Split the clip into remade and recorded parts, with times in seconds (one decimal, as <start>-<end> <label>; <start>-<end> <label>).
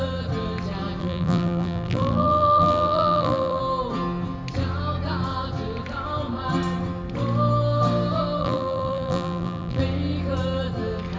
0.0-1.0 recorded; 1.0-3.6 remade; 3.6-8.4 recorded; 8.4-9.8 remade; 9.8-11.2 recorded